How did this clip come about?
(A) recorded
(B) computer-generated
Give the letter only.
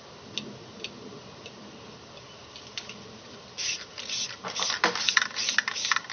A